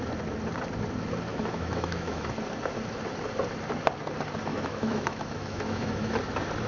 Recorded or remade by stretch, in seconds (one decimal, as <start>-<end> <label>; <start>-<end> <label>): 0.0-1.3 recorded; 1.3-2.3 remade; 2.3-4.5 recorded; 4.5-6.1 remade; 6.1-6.7 recorded